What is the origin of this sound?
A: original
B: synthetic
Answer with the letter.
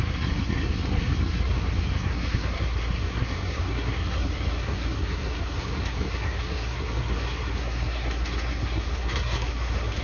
B